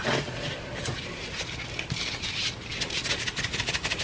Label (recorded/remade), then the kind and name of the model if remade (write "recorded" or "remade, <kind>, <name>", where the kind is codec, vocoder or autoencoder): recorded